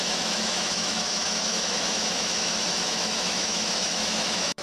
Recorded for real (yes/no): no